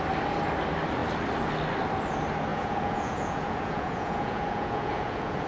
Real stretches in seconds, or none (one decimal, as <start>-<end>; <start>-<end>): 0.0-2.5